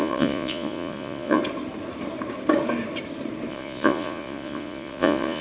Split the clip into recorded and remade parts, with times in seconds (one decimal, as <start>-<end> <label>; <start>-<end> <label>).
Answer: 0.0-1.4 remade; 1.4-3.5 recorded; 3.5-5.4 remade